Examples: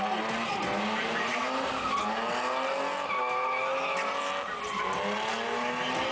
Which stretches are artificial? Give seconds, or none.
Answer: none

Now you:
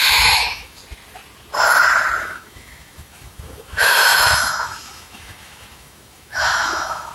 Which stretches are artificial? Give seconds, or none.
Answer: 0.0-0.8 (autoencoder, DAC-VAE); 2.2-7.1

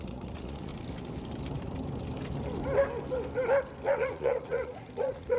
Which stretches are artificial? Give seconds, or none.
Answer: 0.0-0.7 (vocoder, Vocos); 3.9-5.4

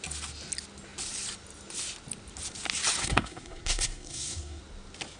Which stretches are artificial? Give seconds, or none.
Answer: 3.0-4.6 (codec, SNAC)

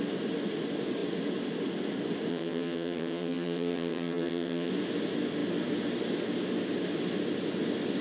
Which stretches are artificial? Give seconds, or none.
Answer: 2.3-4.7 (vocoder, HiFi-GAN)

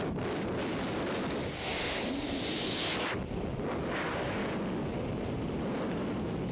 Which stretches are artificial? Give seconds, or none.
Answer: none

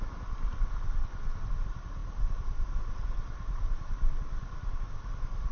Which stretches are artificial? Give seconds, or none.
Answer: none